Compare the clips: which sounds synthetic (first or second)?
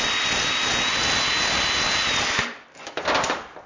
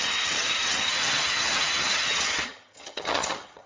second